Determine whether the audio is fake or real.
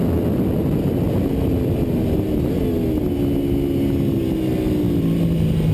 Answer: real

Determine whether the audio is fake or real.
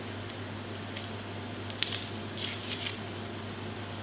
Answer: real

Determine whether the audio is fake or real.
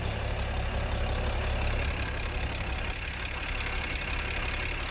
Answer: real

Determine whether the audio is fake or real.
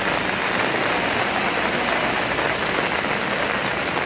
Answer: real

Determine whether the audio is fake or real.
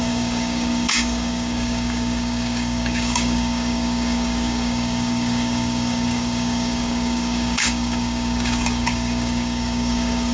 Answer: fake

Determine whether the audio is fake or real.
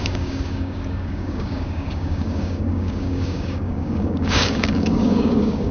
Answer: fake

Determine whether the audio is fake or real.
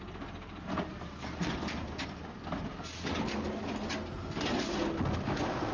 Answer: real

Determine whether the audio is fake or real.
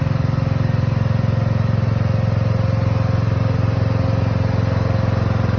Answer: real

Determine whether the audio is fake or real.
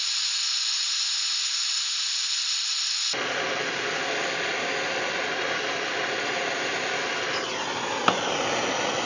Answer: real